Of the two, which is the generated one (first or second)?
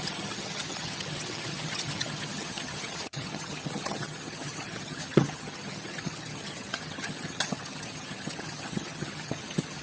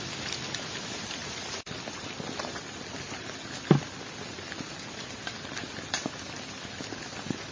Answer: first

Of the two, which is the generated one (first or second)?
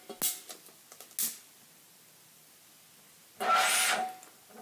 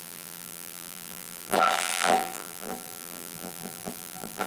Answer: second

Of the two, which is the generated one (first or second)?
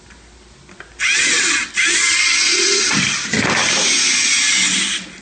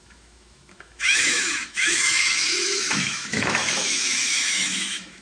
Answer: second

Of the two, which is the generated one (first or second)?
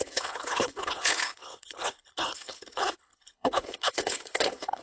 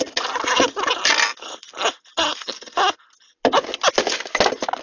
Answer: first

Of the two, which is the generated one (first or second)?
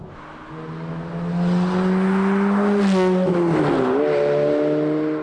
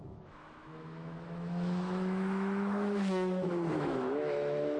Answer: second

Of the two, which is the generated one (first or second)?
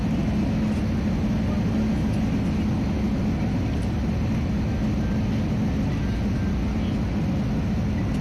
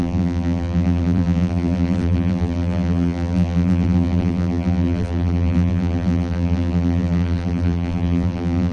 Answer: second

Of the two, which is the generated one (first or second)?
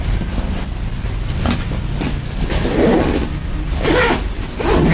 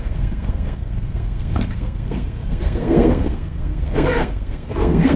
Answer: second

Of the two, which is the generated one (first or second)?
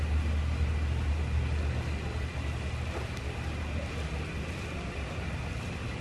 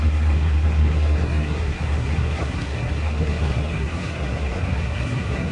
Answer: second